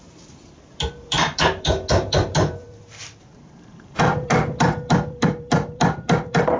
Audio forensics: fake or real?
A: fake